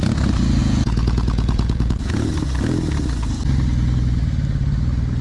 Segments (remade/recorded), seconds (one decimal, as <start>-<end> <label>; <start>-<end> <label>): 0.0-0.6 recorded; 0.6-2.3 remade; 2.3-5.2 recorded